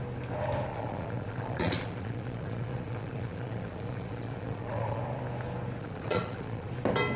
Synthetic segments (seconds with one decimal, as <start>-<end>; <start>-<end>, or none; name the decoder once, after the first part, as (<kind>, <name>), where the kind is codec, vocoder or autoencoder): 0.7-5.0 (vocoder, Vocos); 5.8-6.7